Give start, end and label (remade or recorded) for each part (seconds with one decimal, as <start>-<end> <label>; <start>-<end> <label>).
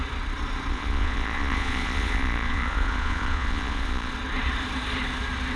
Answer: 0.0-0.7 recorded; 0.7-4.1 remade; 4.1-5.6 recorded